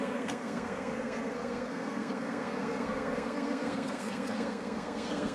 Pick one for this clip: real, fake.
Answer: fake